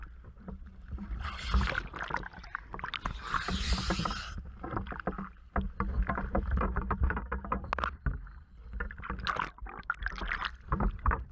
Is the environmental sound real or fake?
real